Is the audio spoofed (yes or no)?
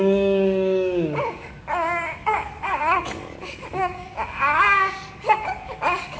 yes